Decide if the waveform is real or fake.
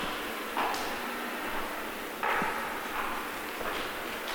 real